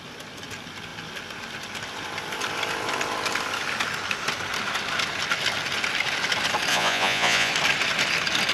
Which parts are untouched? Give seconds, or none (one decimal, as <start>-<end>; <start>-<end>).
0.0-6.7; 7.5-8.5